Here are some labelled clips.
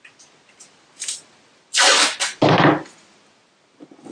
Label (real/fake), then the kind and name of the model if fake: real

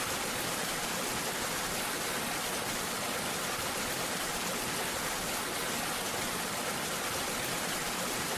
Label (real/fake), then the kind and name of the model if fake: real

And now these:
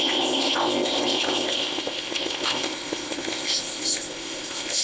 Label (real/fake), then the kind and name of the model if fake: fake, codec, ZipCodec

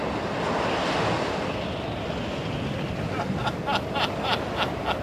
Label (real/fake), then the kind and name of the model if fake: real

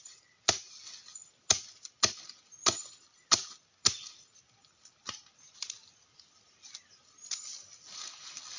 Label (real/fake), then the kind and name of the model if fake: real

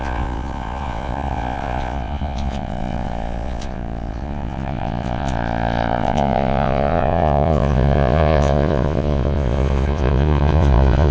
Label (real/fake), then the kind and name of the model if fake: fake, vocoder, Vocos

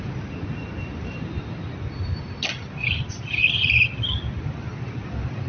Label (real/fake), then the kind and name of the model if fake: real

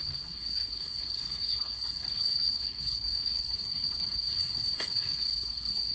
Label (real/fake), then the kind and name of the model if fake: fake, codec, HILCodec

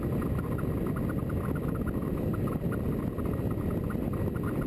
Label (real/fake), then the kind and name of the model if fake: real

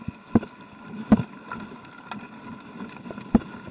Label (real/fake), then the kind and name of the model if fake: real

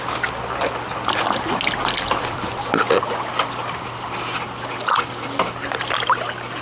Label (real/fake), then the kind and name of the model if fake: real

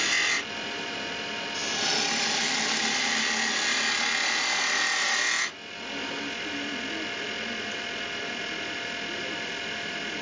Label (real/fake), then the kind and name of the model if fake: real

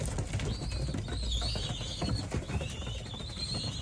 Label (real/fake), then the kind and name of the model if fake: real